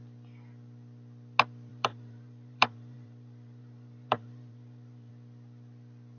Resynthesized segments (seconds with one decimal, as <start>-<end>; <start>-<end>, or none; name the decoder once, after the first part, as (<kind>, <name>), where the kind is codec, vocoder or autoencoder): 1.7-5.1 (vocoder, BigVGAN v2)